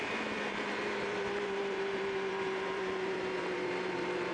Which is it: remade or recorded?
remade